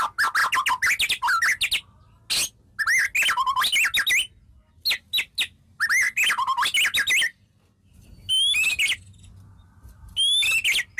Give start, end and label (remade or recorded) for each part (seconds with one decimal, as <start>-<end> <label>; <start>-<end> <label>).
0.0-11.0 recorded